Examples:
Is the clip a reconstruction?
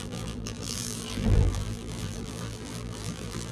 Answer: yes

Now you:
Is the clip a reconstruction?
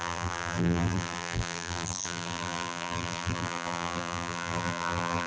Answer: yes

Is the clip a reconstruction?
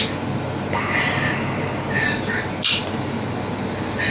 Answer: no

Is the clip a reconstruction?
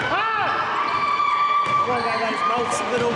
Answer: no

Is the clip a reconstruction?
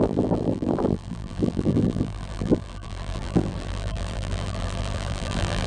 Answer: yes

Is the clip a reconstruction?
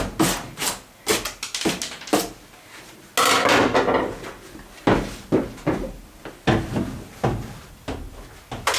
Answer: no